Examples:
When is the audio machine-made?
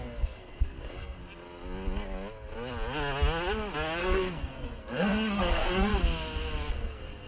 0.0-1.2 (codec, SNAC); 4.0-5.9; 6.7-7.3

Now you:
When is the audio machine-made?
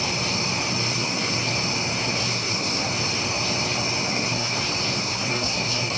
0.9-1.5 (codec, SNAC); 2.0-2.9; 4.1-4.6; 5.0-6.0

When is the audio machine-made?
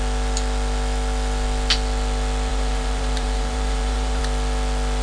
2.5-4.2 (vocoder, BigVGAN v2)